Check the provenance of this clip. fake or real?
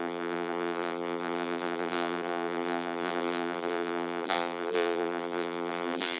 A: fake